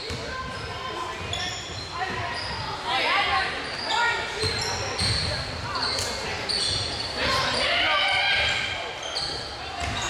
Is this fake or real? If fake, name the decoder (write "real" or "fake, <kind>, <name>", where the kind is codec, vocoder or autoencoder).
real